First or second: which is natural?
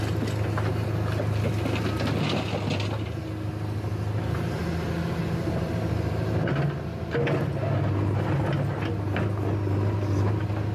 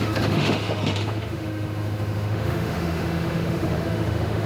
first